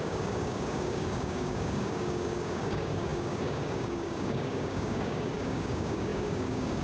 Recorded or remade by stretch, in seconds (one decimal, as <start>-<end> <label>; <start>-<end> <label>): 0.0-6.8 remade